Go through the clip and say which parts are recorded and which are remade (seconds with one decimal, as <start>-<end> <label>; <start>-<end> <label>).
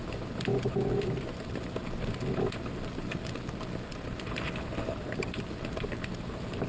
0.0-0.5 recorded; 0.5-1.2 remade; 1.2-6.7 recorded